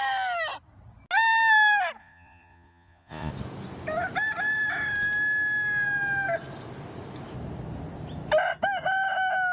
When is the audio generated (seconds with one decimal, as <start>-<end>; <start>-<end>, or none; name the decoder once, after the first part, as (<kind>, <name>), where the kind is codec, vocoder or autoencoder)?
2.0-3.3 (vocoder, Vocos)